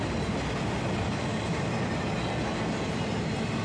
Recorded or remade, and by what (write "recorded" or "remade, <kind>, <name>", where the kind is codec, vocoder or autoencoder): recorded